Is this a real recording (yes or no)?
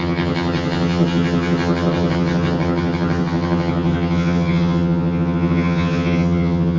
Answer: no